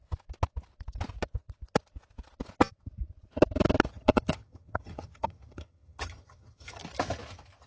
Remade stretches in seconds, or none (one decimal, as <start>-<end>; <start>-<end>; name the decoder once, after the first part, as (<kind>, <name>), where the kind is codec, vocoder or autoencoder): 3.9-6.8 (vocoder, HiFi-GAN)